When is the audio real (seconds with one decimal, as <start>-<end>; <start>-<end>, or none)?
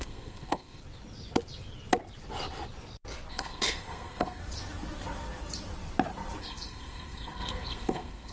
0.8-3.3; 4.4-6.4